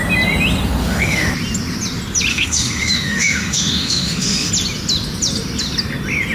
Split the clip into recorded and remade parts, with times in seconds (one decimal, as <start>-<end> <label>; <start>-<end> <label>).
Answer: 0.0-0.8 recorded; 0.8-1.3 remade; 1.3-2.3 recorded; 2.3-4.5 remade; 4.5-6.3 recorded